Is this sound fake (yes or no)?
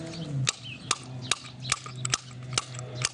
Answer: no